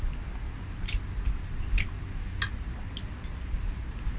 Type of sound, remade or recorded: recorded